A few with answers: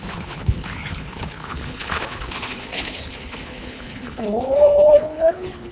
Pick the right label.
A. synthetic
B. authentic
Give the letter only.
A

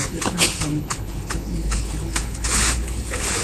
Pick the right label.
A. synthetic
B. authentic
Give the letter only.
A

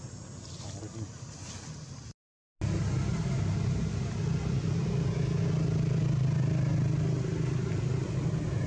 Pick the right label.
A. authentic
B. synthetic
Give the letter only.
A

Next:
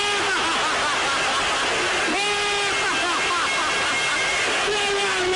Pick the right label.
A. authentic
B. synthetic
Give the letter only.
A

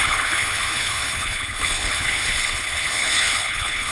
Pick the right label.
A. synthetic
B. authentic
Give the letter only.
A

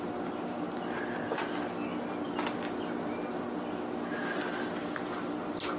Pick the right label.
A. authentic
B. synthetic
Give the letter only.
A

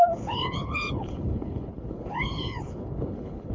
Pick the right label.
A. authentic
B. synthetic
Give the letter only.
B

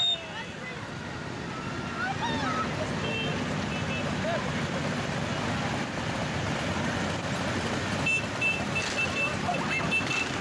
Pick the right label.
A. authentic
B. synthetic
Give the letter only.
A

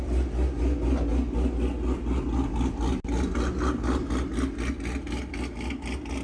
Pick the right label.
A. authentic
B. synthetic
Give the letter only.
A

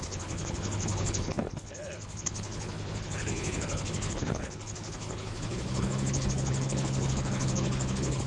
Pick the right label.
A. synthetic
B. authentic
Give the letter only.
A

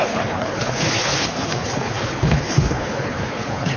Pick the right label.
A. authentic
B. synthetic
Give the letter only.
B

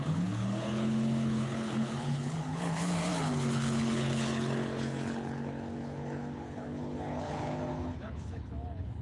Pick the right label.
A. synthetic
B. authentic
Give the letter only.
A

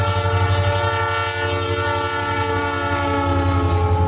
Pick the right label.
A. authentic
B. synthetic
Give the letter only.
A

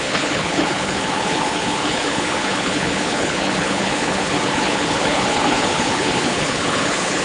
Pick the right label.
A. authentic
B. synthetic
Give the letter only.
B